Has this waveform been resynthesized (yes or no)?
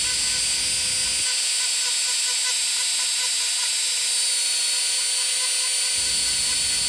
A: no